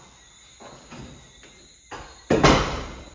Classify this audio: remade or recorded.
recorded